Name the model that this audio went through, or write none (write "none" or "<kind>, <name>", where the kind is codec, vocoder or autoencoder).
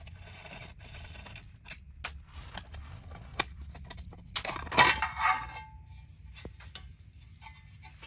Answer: none